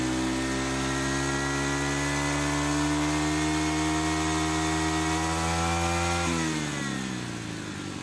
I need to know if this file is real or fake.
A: real